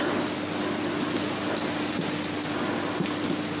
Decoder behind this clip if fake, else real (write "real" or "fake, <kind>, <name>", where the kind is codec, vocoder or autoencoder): real